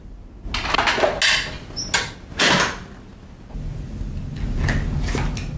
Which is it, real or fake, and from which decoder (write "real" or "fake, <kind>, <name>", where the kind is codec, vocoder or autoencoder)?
real